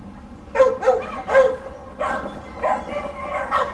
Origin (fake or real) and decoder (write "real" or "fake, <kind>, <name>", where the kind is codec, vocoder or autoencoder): real